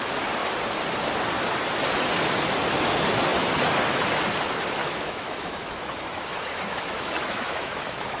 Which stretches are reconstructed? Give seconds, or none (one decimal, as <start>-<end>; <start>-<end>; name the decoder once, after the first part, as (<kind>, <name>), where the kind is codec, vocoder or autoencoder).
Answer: 4.8-8.2 (autoencoder, DAC-VAE)